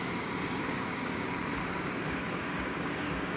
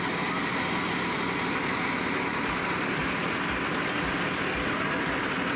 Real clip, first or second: second